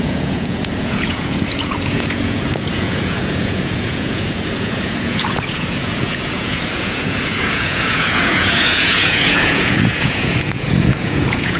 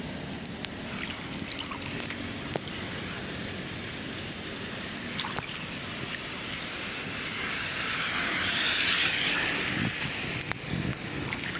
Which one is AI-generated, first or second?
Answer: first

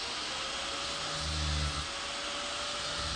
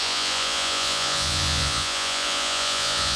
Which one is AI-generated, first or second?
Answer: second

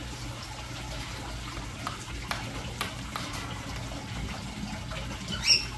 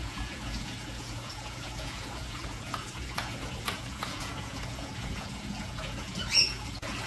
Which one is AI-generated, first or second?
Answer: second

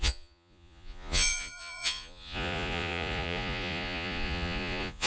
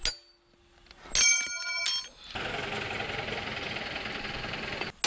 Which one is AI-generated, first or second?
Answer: first